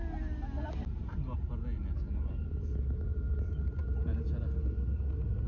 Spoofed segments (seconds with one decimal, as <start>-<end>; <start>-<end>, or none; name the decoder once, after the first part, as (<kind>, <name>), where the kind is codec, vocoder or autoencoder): none